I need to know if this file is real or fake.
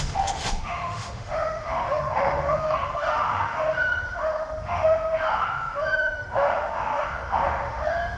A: fake